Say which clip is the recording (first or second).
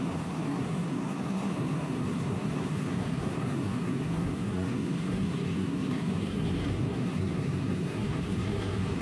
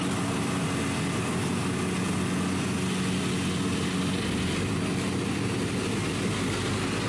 second